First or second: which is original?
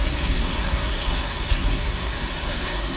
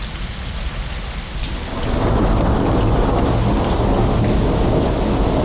second